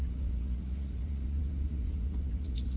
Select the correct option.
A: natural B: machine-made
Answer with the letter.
B